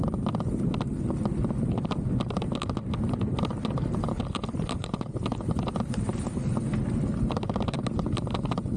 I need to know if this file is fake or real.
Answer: real